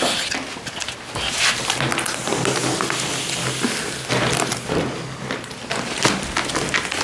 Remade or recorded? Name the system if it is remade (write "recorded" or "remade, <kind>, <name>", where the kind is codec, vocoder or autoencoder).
recorded